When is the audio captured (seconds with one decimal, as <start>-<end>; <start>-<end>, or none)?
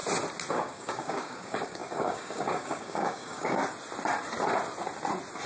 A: 0.0-0.5; 3.6-5.5